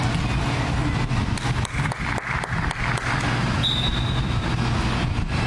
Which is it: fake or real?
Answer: real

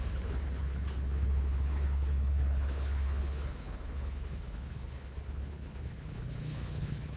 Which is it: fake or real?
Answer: fake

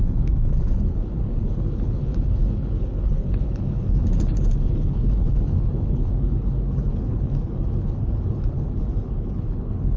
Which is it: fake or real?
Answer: fake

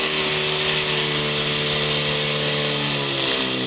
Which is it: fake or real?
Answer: real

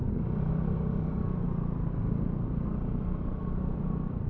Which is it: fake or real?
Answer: real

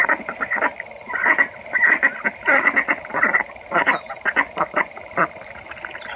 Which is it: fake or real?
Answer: real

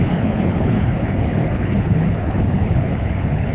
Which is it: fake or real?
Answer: fake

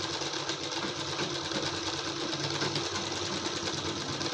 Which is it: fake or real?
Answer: real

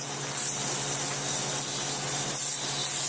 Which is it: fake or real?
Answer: real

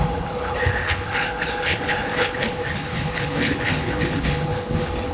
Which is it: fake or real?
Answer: fake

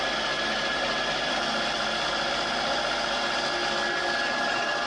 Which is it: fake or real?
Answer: real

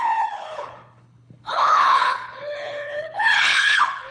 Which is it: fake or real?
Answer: fake